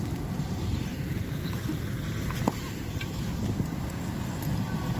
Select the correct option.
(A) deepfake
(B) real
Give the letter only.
B